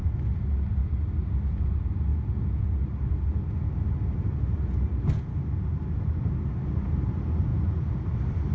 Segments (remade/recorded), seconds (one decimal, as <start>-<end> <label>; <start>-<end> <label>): 0.0-2.1 recorded; 2.1-2.7 remade; 2.7-7.5 recorded; 7.5-8.0 remade; 8.0-8.5 recorded